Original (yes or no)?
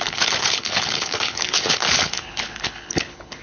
no